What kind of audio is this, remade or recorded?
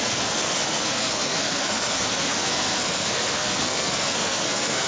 remade